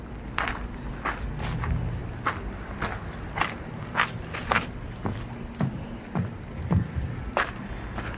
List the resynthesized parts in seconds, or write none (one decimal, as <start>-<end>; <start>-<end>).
none